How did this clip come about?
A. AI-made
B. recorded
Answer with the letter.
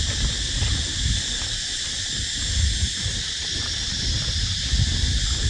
B